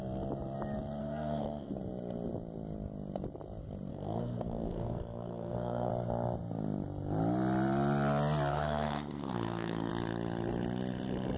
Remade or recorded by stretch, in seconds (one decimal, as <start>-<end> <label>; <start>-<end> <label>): 0.0-1.0 recorded; 1.0-1.7 remade; 1.7-3.9 recorded; 3.9-5.9 remade; 5.9-8.5 recorded; 8.5-9.9 remade; 9.9-11.4 recorded